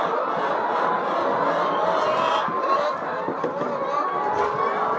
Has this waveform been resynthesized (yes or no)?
no